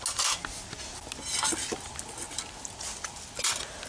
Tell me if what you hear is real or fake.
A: real